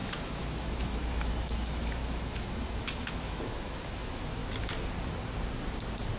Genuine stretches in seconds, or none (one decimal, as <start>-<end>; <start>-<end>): 4.4-6.2